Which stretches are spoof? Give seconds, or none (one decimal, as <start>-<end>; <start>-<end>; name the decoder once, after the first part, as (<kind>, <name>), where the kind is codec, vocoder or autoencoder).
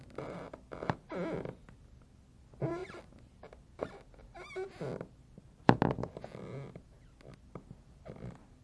none